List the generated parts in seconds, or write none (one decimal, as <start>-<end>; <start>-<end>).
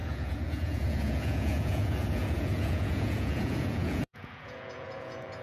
0.0-5.4